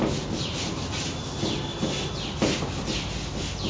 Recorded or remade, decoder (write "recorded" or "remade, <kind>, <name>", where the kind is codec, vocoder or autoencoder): recorded